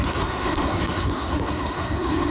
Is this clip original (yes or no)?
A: no